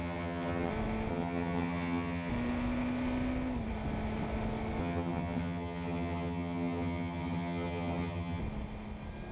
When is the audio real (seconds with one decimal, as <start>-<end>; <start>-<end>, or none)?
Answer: 0.7-1.1; 2.3-4.8; 8.4-9.3